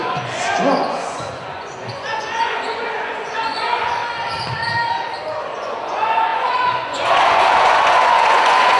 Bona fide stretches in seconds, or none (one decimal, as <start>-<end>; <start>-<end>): 4.0-5.4